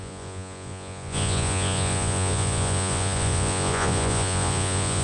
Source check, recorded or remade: remade